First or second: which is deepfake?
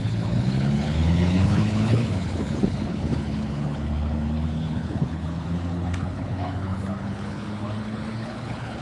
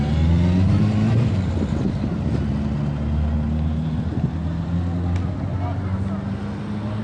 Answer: first